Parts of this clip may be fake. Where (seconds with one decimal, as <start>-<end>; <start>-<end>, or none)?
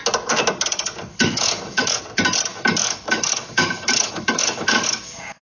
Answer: 1.1-2.0; 2.5-5.4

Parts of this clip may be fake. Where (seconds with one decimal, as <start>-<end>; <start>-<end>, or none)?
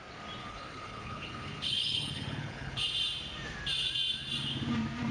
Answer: 0.4-2.8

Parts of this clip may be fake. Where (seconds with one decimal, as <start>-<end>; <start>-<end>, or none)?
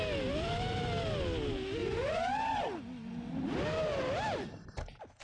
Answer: none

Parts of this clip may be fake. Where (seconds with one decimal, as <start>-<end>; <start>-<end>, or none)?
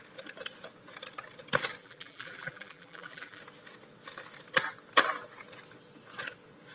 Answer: 1.8-3.4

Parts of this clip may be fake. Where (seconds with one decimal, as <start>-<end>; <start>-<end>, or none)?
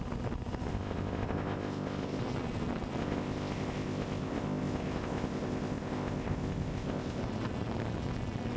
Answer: 0.7-2.2; 3.0-7.2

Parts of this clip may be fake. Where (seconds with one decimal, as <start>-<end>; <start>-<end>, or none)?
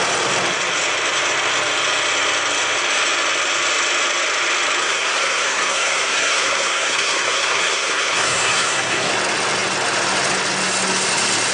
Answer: 4.8-9.1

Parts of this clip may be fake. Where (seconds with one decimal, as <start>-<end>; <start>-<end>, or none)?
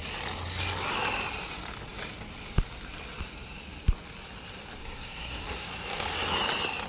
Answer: 4.8-5.7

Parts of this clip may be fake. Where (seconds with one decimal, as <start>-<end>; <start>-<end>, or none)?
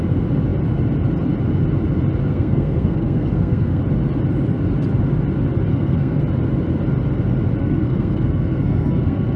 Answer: 2.3-3.8; 5.7-6.2; 7.6-9.4